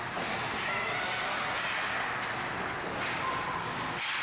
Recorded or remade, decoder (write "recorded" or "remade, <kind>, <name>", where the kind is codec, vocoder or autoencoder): recorded